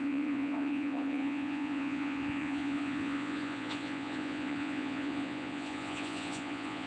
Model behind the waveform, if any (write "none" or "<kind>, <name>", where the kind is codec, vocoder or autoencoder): vocoder, Vocos